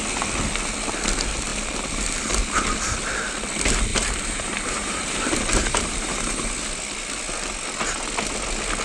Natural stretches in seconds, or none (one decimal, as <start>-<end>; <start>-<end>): 0.0-3.9; 6.5-8.8